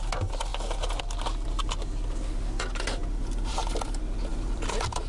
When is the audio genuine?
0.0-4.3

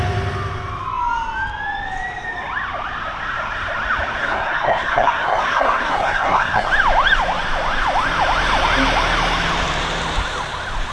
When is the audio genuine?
0.0-4.2; 6.7-10.9

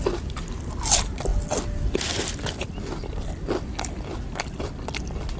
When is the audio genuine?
0.0-5.4

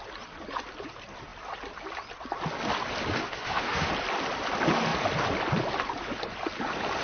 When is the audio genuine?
0.0-3.2; 3.9-7.0

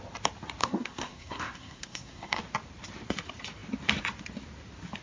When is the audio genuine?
0.0-0.6; 2.4-5.0